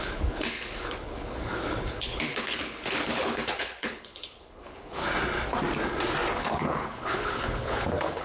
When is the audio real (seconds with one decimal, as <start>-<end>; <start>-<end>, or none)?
5.0-6.3